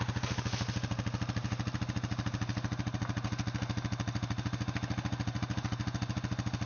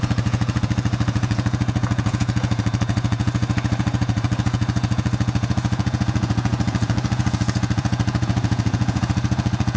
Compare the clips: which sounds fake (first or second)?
second